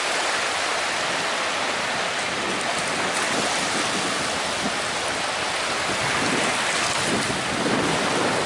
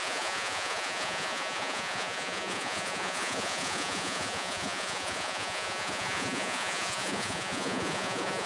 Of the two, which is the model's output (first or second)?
second